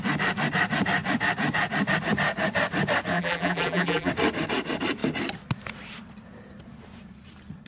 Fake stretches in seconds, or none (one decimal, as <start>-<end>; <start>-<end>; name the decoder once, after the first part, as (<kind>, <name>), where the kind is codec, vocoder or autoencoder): 3.1-4.1 (vocoder, BigVGAN v2)